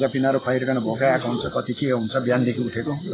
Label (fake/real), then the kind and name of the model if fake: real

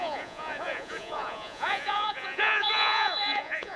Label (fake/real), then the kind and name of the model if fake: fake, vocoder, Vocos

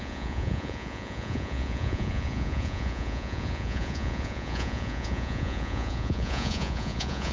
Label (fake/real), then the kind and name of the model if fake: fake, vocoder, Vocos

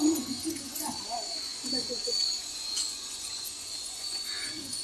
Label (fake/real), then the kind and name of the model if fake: fake, vocoder, Vocos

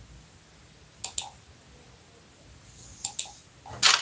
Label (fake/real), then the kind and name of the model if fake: real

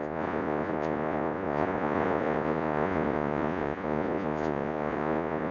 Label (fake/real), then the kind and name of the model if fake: fake, vocoder, Vocos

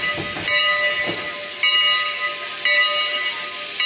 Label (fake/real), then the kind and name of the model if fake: real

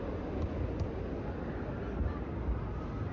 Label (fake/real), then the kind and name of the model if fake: real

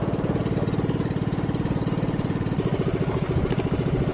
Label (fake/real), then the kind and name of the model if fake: real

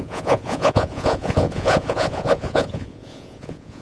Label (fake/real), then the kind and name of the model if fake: fake, vocoder, Vocos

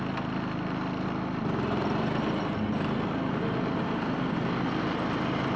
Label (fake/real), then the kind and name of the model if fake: real